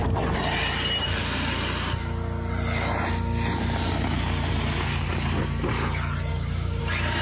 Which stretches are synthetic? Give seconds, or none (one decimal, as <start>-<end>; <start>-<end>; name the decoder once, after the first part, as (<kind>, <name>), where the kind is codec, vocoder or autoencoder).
6.3-6.8 (codec, DAC)